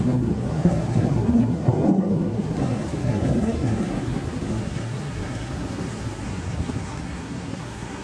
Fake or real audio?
fake